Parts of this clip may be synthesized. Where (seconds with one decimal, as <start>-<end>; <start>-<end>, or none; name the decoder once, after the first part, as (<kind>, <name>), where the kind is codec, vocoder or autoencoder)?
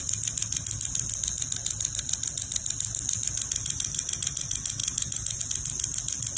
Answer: 4.8-5.4 (vocoder, BigVGAN v2)